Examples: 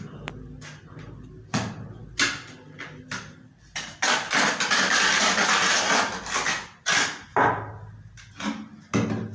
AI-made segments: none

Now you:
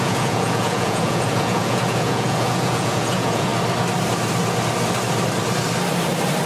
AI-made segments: 0.0-3.5

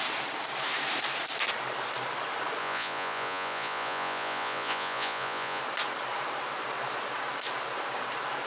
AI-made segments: 2.6-5.6

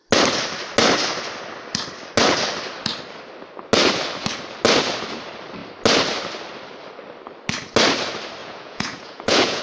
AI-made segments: 8.4-9.6

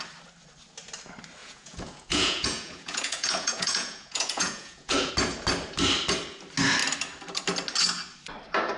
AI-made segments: 1.4-5.1

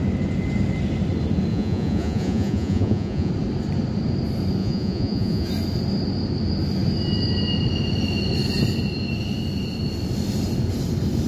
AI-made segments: 1.5-3.3; 4.6-5.5

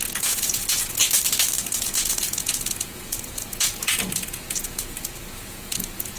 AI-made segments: 0.0-1.0; 1.6-6.2

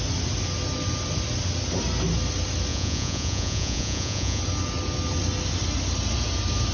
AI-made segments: 2.7-4.4